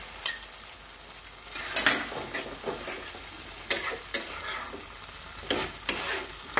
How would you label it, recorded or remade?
recorded